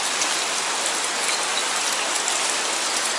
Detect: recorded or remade recorded